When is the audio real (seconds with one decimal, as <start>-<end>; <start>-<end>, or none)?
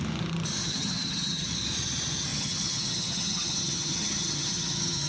0.0-0.6; 1.5-2.3